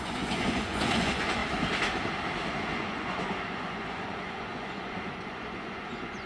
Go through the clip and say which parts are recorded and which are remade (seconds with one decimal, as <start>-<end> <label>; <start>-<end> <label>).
0.0-1.4 remade; 1.4-2.5 recorded; 2.5-6.3 remade